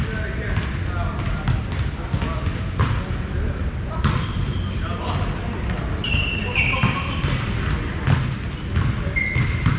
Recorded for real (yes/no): yes